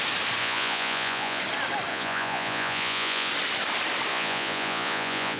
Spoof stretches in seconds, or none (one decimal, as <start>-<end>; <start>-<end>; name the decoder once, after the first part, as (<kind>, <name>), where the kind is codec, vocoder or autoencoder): 0.4-1.4 (vocoder, Vocos); 1.9-3.3; 4.1-5.4